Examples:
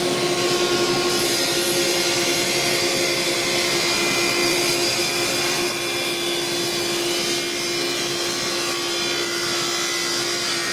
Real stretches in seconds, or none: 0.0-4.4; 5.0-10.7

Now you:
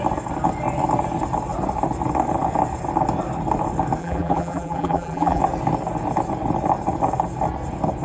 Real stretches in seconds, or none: 0.0-4.0; 5.4-8.0

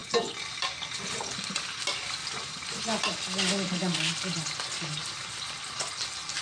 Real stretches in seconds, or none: 0.0-2.2; 2.8-5.0; 6.0-6.4